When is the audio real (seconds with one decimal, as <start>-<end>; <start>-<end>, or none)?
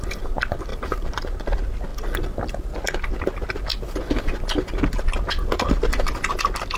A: 0.0-0.7; 1.5-6.8